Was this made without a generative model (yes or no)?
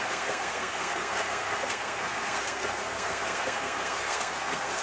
no